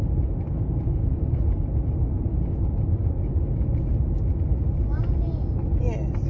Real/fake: real